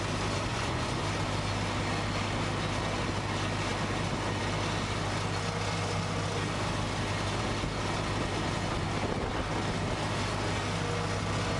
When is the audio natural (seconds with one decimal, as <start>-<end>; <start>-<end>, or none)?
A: 0.0-0.5; 1.0-11.6